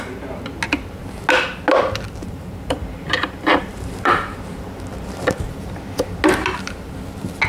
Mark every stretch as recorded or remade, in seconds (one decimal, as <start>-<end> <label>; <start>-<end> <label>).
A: 0.0-2.2 recorded; 2.2-5.7 remade; 5.7-7.5 recorded